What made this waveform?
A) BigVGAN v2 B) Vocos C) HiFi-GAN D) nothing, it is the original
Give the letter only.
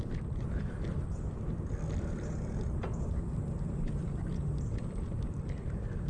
D